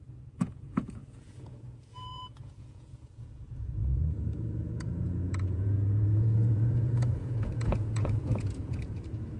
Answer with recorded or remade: remade